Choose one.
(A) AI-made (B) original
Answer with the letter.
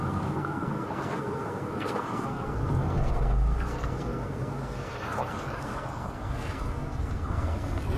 A